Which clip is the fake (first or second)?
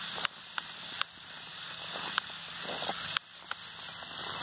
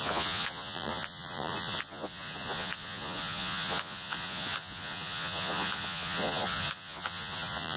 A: second